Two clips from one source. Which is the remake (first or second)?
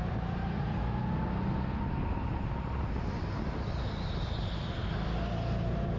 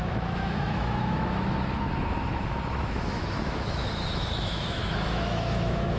second